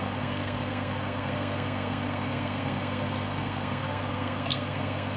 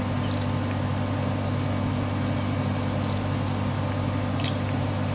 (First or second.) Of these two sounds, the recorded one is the second